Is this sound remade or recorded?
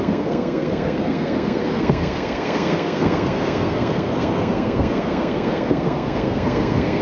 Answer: remade